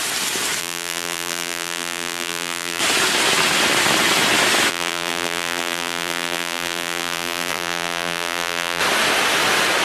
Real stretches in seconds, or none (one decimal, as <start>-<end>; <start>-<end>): 0.0-0.6; 2.8-4.7; 8.8-9.8